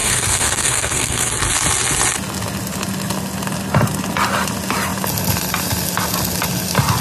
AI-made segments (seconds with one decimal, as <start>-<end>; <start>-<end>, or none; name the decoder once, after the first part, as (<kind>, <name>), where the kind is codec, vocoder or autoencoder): 0.0-1.3 (codec, SNAC)